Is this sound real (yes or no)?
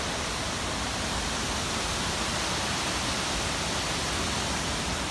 yes